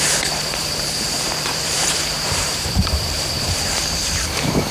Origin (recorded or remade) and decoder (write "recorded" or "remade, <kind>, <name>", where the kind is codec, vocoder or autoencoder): remade, vocoder, BigVGAN v2